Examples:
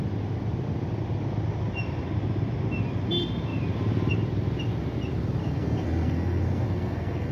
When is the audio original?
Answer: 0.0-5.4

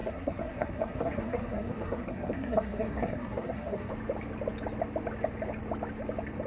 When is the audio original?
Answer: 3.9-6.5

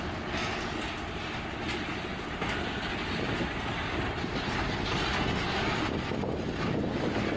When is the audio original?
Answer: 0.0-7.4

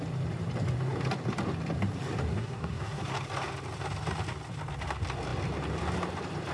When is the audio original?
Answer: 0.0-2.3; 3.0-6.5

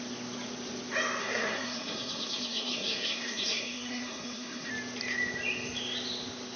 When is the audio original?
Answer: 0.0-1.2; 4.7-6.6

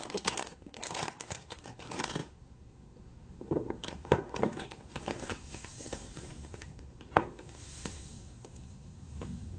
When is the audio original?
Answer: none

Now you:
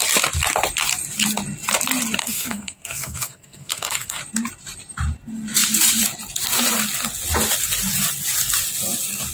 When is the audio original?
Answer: 0.0-2.2; 4.2-9.3

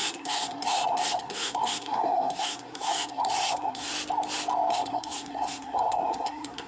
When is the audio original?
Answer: 3.9-4.7